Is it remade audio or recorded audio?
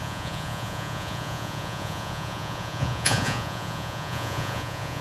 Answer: remade